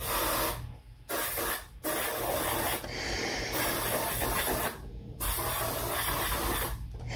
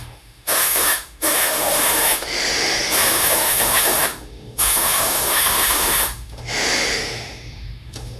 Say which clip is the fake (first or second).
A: second